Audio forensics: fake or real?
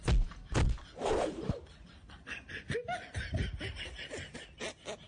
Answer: real